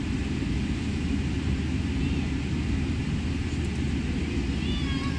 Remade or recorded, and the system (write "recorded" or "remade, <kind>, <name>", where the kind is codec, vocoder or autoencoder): recorded